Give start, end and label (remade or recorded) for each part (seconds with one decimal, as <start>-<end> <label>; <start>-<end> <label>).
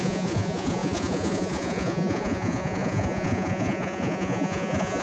0.0-5.0 remade